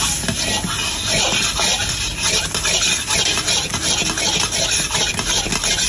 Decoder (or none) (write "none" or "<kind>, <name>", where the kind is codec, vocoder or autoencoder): none